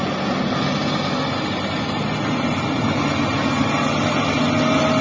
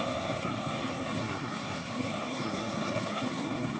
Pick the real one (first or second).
first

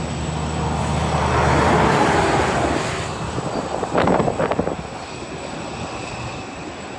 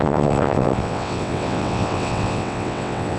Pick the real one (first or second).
first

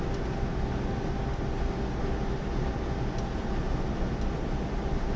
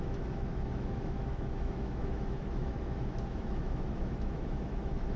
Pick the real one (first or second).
first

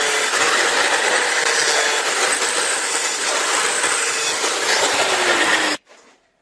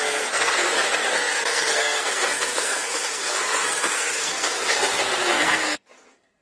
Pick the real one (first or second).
first